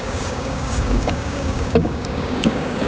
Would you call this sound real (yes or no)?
no